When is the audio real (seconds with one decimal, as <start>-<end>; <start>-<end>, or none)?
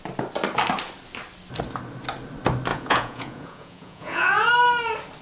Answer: 0.0-2.7; 4.5-5.2